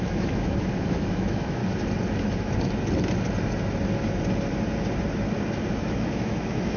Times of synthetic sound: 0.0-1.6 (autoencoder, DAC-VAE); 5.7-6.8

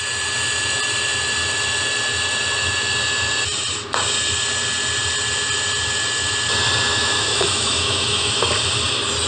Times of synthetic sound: 6.9-8.3 (autoencoder, DAC-VAE)